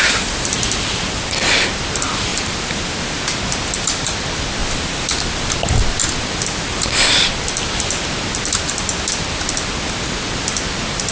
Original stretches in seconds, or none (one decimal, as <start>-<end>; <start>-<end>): 0.0-2.3; 3.2-11.1

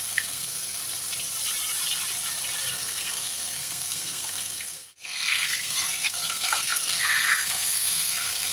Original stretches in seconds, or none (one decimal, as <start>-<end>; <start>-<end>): 0.8-2.7

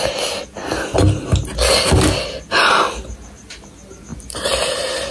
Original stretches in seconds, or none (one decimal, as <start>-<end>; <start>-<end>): 0.0-4.1

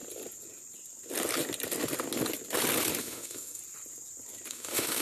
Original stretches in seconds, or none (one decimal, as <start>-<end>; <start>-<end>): 0.0-3.0; 3.6-4.5

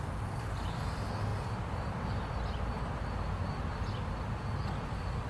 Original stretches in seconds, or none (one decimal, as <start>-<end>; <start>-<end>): 0.0-5.3